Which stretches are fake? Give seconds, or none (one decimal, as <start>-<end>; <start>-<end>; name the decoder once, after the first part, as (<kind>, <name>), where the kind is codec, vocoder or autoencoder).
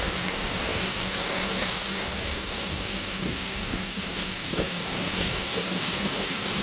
0.0-6.6 (codec, DAC)